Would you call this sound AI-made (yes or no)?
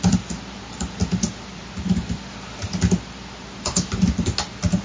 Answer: no